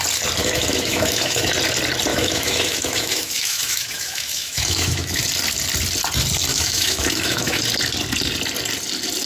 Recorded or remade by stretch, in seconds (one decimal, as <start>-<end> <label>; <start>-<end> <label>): 0.0-0.4 recorded; 0.4-1.5 remade; 1.5-2.1 recorded; 2.1-5.2 remade; 5.2-6.5 recorded; 6.5-7.6 remade; 7.6-9.3 recorded

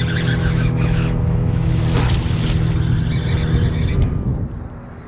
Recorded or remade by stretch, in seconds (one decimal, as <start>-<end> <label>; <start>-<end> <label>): 0.0-0.4 recorded; 0.4-1.8 remade; 1.8-5.1 recorded